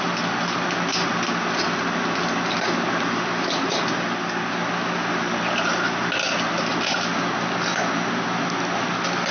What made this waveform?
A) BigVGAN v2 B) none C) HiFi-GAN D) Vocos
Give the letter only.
B